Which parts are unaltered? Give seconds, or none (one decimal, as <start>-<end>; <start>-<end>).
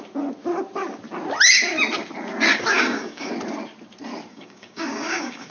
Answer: 0.0-2.7; 3.3-4.3